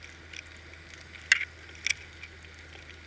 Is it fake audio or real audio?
real